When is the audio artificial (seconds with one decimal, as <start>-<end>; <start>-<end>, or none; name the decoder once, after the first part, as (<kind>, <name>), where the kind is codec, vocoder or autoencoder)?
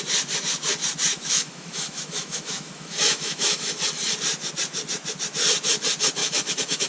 1.1-3.7 (autoencoder, DAC-VAE); 6.2-6.9